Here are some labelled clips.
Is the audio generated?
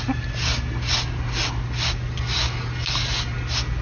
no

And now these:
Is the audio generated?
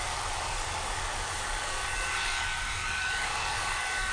yes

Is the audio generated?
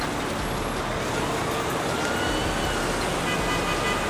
no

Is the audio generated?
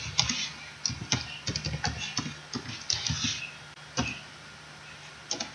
no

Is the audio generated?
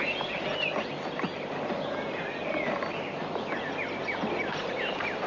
no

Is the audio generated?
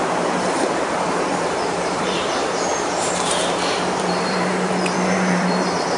yes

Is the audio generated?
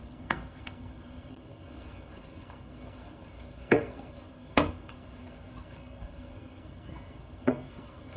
yes